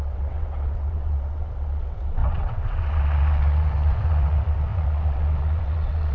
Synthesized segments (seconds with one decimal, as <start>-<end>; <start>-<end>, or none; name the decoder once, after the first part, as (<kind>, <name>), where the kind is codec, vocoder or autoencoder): 0.0-6.1 (vocoder, WaveNeXt)